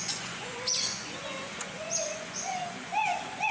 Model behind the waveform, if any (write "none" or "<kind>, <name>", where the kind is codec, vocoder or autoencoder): vocoder, Vocos